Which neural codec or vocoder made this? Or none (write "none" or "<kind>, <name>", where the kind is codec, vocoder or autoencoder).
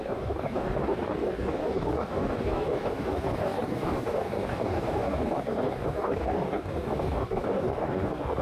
codec, DAC